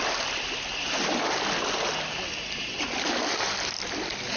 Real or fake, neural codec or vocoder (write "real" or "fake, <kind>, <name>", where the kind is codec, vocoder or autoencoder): real